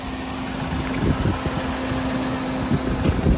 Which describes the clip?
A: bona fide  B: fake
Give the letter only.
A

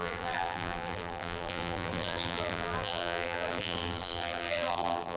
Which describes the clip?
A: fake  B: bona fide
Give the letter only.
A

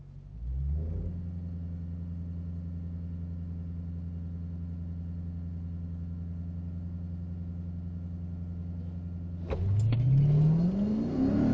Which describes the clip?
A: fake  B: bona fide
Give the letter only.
B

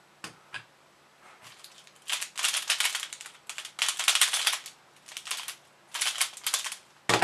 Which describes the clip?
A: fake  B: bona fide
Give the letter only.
B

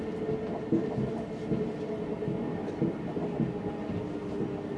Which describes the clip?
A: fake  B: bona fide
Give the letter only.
B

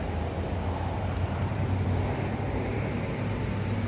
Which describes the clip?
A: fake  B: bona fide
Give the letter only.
A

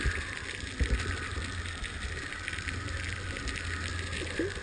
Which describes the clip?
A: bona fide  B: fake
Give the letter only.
A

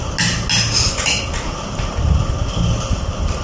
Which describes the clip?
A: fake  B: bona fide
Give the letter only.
B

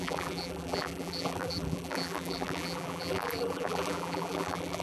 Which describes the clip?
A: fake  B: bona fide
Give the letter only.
A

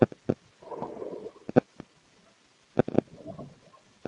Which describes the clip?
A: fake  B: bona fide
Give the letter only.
B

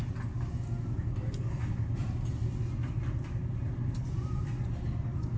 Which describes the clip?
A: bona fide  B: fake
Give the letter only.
A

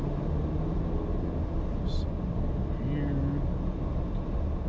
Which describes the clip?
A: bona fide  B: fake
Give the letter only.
A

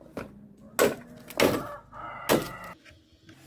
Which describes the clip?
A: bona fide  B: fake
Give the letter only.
A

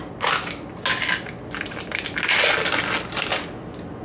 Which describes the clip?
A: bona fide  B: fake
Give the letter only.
A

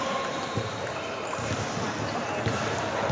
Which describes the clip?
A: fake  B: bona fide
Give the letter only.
B